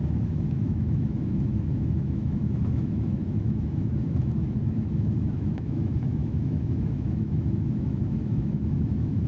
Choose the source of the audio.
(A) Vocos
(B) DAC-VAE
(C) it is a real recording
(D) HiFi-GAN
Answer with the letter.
B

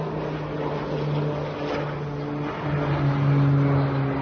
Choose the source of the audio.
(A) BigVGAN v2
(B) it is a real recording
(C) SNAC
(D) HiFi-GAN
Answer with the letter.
B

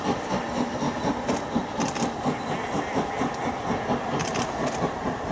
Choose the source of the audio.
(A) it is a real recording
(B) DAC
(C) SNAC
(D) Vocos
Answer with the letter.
A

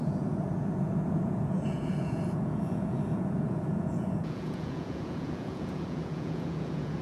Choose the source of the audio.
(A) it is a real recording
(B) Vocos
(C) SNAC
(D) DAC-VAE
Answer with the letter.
B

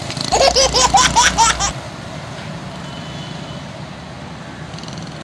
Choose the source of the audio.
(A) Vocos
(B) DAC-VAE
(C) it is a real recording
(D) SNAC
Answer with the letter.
C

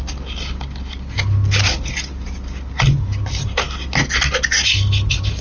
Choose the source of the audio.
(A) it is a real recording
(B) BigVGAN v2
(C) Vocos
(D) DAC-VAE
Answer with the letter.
A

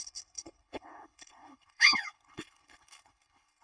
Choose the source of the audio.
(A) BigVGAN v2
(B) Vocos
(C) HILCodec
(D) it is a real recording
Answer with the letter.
C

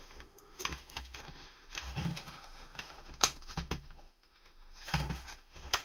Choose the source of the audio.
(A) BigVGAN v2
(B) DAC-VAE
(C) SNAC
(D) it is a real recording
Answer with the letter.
B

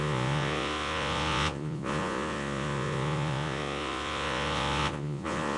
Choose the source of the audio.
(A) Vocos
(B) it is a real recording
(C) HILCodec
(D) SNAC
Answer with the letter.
A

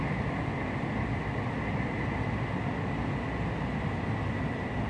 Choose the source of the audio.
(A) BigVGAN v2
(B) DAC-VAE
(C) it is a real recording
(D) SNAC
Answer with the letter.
C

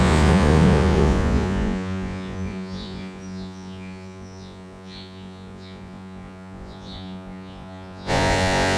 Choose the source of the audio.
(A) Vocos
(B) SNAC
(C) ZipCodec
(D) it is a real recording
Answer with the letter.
A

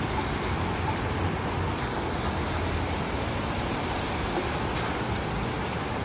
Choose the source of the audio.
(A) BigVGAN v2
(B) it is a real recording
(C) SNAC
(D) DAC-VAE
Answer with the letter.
B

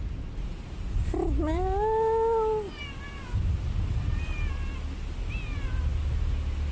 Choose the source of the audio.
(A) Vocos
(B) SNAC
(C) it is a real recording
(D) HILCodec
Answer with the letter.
C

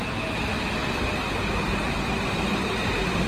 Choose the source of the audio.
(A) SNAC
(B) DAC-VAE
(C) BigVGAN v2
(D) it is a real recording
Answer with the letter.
D